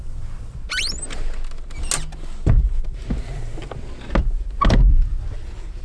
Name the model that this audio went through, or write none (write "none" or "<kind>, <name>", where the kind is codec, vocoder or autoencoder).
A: none